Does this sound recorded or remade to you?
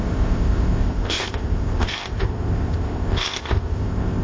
remade